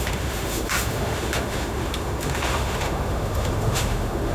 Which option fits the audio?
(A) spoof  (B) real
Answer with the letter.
A